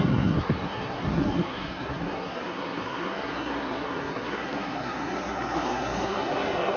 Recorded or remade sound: remade